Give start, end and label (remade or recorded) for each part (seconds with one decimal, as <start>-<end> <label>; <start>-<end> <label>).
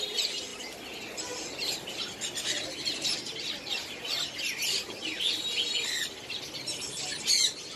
0.0-0.5 remade; 0.5-1.2 recorded; 1.2-7.8 remade